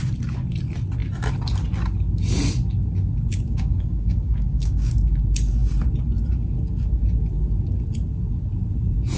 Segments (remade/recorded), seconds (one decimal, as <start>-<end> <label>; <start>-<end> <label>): 0.0-3.3 recorded; 3.3-4.9 remade; 4.9-9.2 recorded